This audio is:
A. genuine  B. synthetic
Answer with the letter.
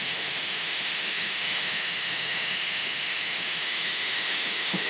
B